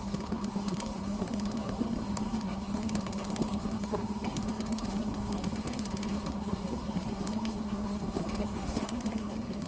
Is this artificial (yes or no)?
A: yes